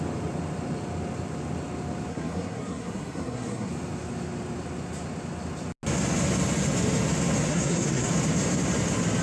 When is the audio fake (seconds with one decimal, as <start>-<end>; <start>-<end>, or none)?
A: 2.1-3.7; 7.5-8.1

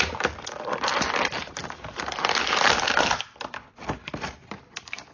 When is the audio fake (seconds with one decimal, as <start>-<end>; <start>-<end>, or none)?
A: none

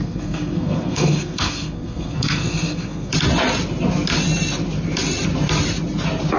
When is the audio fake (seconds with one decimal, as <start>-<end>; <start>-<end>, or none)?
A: 0.0-3.1

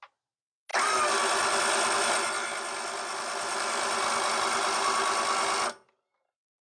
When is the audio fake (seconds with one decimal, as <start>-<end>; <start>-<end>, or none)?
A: none

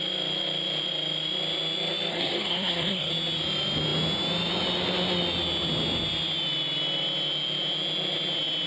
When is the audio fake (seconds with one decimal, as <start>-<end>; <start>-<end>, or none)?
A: 2.1-3.1